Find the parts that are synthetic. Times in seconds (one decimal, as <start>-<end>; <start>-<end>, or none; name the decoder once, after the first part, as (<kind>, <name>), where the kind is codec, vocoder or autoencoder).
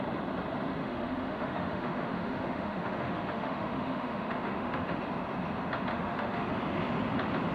0.8-5.0 (autoencoder, DAC-VAE); 5.9-6.5